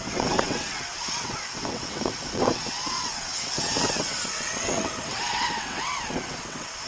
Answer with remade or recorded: remade